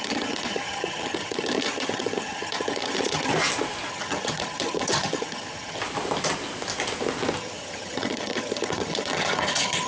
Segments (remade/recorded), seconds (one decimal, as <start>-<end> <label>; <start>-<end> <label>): 0.0-3.3 remade; 3.3-3.9 recorded; 3.9-5.8 remade; 5.8-7.4 recorded; 7.4-9.9 remade